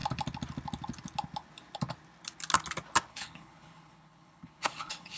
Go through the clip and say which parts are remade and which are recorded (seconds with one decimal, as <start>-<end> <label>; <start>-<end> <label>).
0.0-3.1 recorded; 3.1-5.2 remade